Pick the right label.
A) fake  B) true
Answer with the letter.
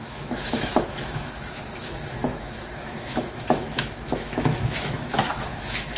A